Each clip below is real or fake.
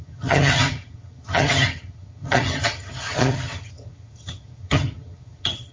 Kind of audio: fake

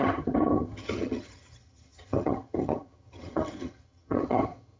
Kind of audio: fake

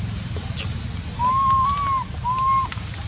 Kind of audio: real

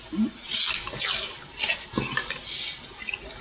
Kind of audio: real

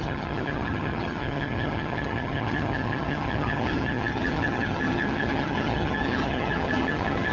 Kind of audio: fake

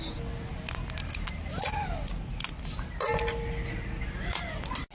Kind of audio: real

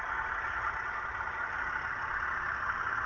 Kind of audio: real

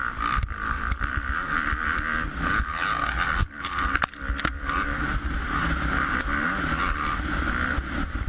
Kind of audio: real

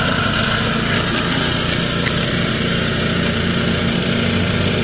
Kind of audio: real